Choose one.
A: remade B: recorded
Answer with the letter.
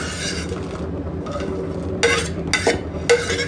B